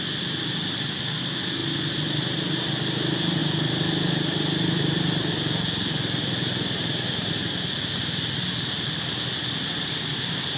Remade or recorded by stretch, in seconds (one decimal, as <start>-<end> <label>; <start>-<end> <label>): 0.0-10.6 recorded